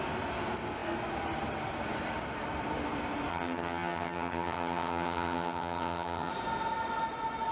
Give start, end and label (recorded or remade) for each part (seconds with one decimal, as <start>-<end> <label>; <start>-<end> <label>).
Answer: 0.0-3.3 recorded; 3.3-6.3 remade; 6.3-7.5 recorded